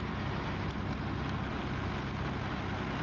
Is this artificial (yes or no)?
no